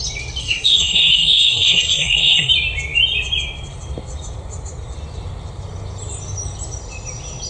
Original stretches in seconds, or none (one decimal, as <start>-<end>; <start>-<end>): 0.0-0.4; 2.5-7.5